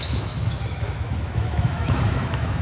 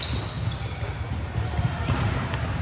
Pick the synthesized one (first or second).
first